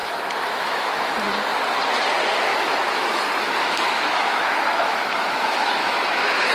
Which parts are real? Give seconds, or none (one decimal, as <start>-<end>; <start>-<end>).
1.1-2.5